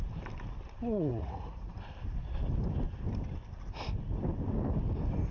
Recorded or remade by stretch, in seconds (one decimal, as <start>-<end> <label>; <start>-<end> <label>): 0.0-1.1 recorded; 1.1-1.7 remade; 1.7-5.3 recorded